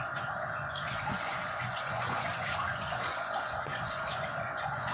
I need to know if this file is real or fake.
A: fake